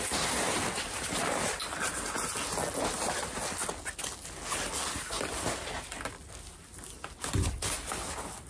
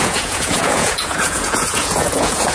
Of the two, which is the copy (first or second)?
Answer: second